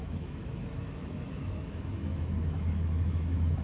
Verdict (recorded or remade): remade